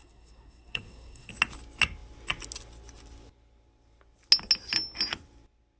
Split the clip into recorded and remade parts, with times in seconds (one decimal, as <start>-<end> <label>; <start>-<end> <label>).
0.0-1.3 remade; 1.3-5.8 recorded